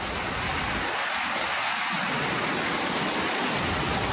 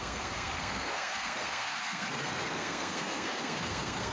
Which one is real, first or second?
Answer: first